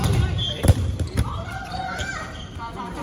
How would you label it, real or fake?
fake